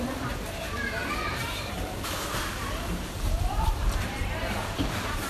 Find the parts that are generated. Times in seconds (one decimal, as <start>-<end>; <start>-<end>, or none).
0.0-5.3